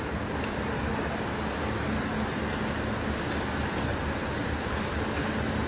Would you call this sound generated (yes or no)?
no